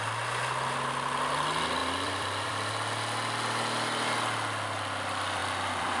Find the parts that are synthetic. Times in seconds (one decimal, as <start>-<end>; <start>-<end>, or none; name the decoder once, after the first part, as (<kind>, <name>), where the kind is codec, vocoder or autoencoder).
1.8-2.7 (vocoder, BigVGAN v2); 5.4-6.0